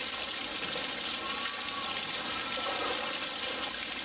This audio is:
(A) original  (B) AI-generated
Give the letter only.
A